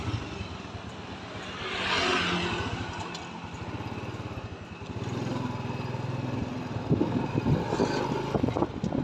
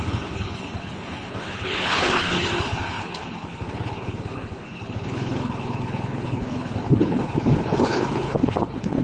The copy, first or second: second